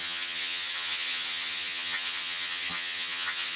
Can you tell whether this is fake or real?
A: fake